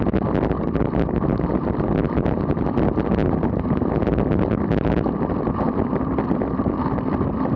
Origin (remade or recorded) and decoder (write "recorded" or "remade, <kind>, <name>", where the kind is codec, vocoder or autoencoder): recorded